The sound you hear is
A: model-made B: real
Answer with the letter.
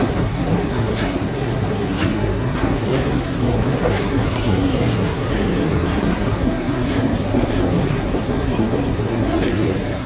A